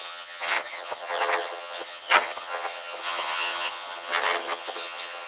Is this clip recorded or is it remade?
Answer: remade